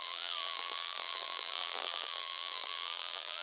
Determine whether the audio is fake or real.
fake